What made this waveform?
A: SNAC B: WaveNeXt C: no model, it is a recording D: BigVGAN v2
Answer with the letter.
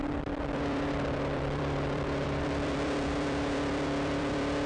D